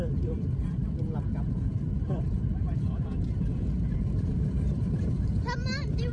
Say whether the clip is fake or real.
fake